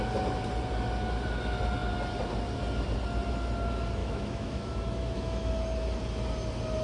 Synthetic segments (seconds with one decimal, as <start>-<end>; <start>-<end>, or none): 4.0-5.5